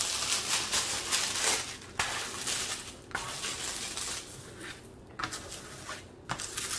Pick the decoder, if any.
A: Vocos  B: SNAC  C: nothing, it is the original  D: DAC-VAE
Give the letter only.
C